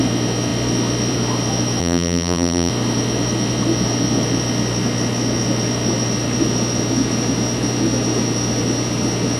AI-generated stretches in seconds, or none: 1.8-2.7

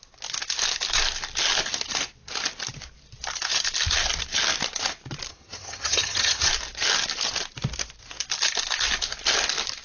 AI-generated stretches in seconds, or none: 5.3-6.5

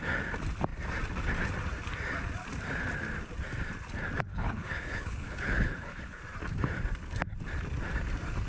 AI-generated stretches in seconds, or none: 4.3-6.2